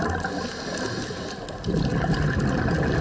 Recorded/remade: recorded